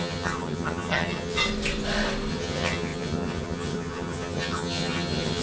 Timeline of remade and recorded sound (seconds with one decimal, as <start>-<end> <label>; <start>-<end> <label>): 0.0-1.4 remade; 1.4-2.3 recorded; 2.3-5.4 remade

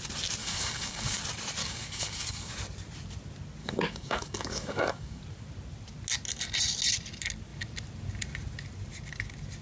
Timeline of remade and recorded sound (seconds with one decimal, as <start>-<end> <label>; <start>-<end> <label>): 0.0-0.4 recorded; 0.4-1.2 remade; 1.2-1.6 recorded; 1.6-2.5 remade; 2.5-3.6 recorded; 3.6-5.2 remade; 5.2-9.6 recorded

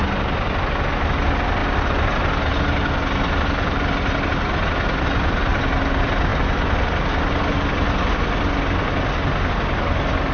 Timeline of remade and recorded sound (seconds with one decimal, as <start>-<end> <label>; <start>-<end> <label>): 0.0-10.3 recorded

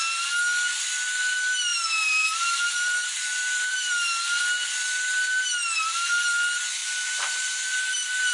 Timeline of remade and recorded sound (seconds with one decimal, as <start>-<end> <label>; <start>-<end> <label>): 0.0-1.7 recorded; 1.7-3.9 remade; 3.9-6.8 recorded; 6.8-7.8 remade; 7.8-8.3 recorded

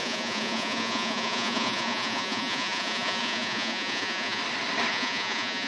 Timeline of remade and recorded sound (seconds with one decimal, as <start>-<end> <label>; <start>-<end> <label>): 0.0-4.4 remade; 4.4-4.9 recorded; 4.9-5.7 remade

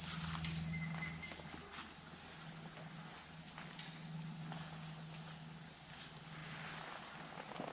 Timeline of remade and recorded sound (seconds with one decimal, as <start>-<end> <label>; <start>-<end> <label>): 0.0-7.7 recorded

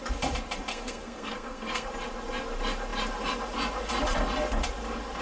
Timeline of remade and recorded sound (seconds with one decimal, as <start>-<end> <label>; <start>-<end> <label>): 0.0-0.7 recorded; 0.7-1.9 remade; 1.9-5.2 recorded

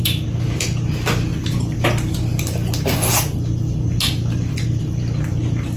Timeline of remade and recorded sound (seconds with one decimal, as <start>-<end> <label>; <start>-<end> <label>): 0.0-5.8 recorded